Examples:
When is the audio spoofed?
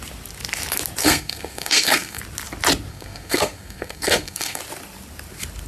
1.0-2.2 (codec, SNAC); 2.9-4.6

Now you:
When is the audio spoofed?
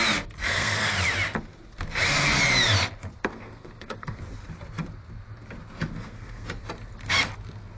0.4-0.9 (codec, SNAC); 3.3-4.2; 5.9-6.5